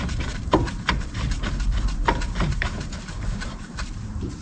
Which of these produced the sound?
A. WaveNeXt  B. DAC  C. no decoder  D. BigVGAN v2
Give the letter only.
D